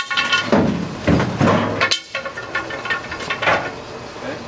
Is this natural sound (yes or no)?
yes